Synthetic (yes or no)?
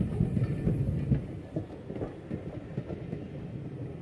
no